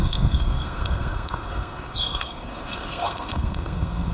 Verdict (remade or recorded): remade